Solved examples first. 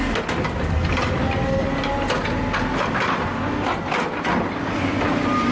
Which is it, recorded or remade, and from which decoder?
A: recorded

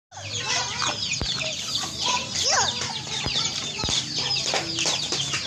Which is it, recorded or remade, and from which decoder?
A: recorded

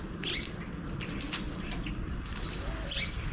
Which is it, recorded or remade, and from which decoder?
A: remade, vocoder, BigVGAN v2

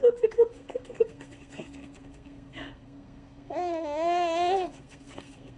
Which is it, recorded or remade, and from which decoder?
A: remade, codec, SNAC